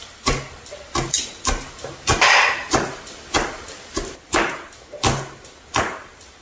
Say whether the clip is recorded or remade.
recorded